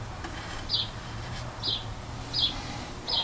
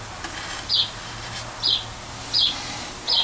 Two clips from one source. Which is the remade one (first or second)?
first